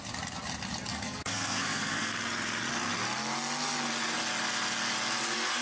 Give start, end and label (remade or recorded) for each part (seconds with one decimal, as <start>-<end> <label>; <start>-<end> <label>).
0.0-0.9 recorded; 0.9-2.1 remade; 2.1-5.6 recorded